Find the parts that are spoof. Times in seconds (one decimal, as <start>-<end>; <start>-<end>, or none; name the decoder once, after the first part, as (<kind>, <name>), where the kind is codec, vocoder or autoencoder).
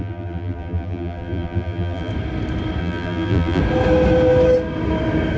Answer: 0.0-2.1 (vocoder, BigVGAN v2); 2.8-3.6